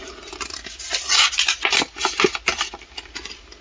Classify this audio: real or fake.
real